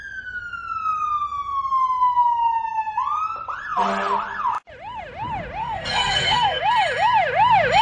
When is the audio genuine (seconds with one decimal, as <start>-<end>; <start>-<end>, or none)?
0.0-5.6; 6.6-7.8